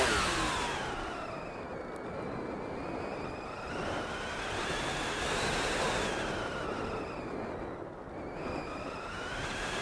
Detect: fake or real real